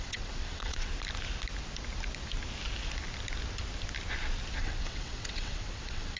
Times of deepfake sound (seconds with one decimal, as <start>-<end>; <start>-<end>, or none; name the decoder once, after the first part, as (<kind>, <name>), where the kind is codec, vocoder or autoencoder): 0.0-0.9 (vocoder, WaveNeXt); 4.6-6.2